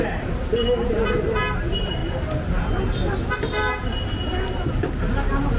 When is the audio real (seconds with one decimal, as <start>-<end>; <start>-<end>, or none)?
0.0-5.6